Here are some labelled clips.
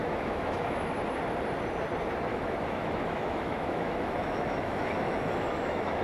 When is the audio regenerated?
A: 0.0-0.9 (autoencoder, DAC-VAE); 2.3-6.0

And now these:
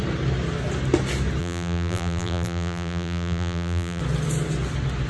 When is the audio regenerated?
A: 1.4-4.0 (vocoder, BigVGAN v2)

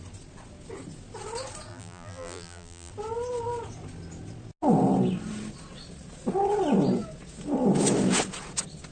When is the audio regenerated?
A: 1.7-2.9 (vocoder, BigVGAN v2)

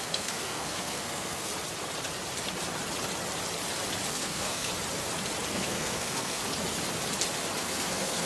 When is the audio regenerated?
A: 0.0-1.5 (codec, SNAC); 4.1-4.7; 5.5-6.4; 7.6-8.3

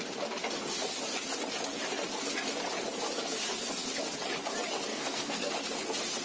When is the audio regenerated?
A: 4.9-5.5 (codec, SNAC)

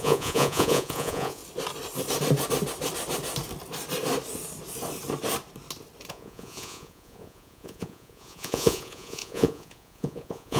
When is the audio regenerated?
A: 0.0-1.4 (vocoder, Vocos); 6.1-10.6

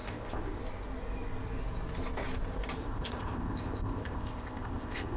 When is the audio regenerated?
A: 0.0-0.6 (codec, ZipCodec); 2.8-5.2

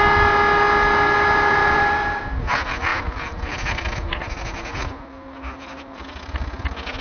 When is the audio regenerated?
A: 1.6-2.2 (vocoder, BigVGAN v2)